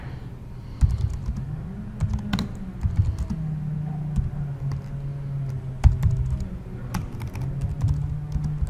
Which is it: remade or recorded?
recorded